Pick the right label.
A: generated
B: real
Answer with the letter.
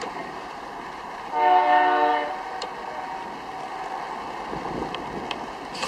B